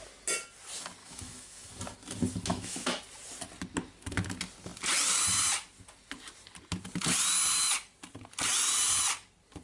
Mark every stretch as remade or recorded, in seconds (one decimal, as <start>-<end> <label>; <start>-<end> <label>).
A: 0.0-1.0 recorded; 1.0-1.7 remade; 1.7-2.5 recorded; 2.5-3.0 remade; 3.0-9.6 recorded

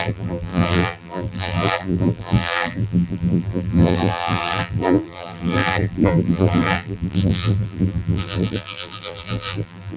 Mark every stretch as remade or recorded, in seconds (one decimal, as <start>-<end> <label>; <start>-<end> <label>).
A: 0.0-10.0 remade

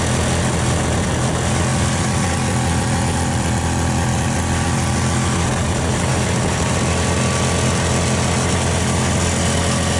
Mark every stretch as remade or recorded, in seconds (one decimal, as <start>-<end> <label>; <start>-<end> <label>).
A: 0.0-1.7 recorded; 1.7-4.9 remade; 4.9-6.1 recorded; 6.1-6.8 remade; 6.8-10.0 recorded

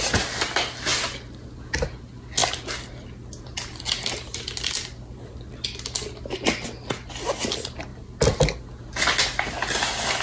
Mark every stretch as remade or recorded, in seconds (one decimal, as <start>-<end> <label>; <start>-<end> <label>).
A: 0.0-10.2 recorded

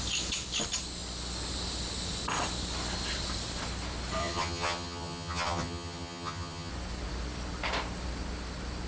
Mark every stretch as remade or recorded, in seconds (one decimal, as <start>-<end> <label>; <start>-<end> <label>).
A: 0.0-4.2 recorded; 4.2-6.7 remade; 6.7-8.9 recorded